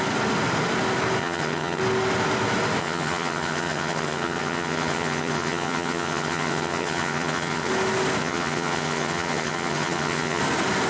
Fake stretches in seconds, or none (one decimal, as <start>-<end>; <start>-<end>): 1.2-1.8; 2.8-7.7; 8.2-10.4